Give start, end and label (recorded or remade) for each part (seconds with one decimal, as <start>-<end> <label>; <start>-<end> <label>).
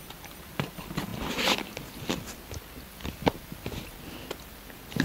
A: 0.0-5.0 recorded